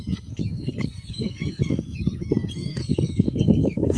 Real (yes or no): no